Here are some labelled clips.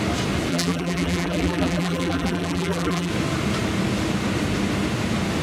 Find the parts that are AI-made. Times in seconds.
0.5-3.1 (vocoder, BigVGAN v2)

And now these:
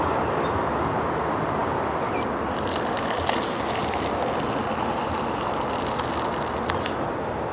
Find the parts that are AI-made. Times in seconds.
none

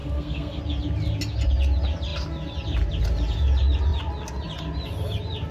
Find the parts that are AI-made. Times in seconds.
0.0-0.6 (codec, SNAC)

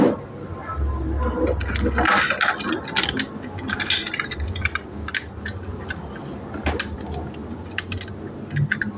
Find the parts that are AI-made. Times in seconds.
none

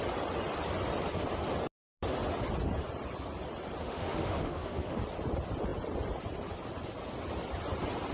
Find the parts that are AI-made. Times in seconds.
3.8-5.0 (autoencoder, DAC-VAE)